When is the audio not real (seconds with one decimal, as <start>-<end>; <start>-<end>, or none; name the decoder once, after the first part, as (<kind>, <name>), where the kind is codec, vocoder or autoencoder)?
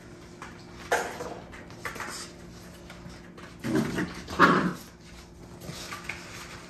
none